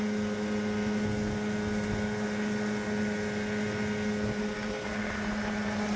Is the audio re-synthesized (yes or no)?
no